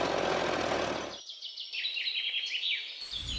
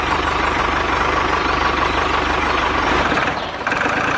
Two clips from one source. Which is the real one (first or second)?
first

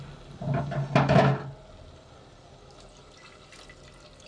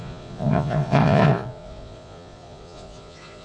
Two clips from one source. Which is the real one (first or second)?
first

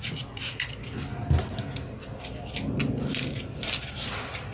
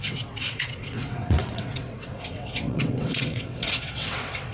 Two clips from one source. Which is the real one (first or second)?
first